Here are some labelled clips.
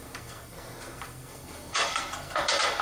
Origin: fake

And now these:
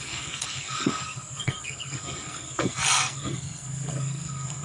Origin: fake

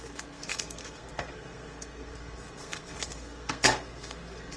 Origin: fake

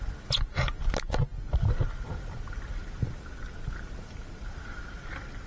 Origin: real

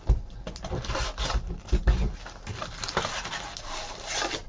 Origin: real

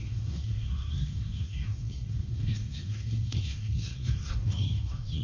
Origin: fake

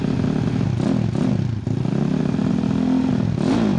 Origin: real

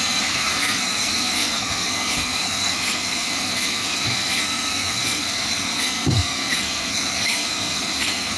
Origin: fake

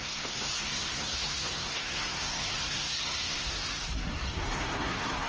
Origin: fake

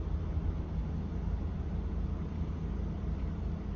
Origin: real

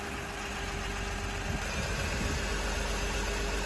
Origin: real